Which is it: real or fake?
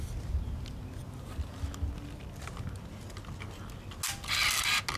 real